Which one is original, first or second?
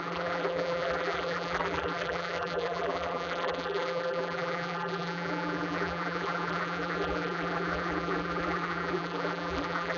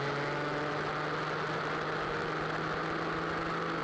second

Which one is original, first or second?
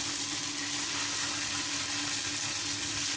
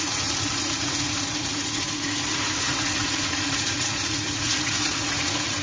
first